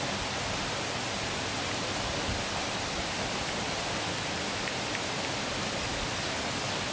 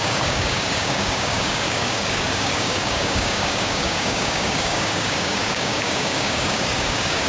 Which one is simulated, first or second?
second